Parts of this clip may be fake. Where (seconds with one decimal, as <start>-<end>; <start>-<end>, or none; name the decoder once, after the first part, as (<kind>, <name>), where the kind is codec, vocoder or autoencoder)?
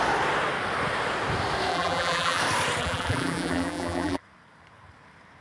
1.7-2.4 (vocoder, BigVGAN v2); 2.8-4.2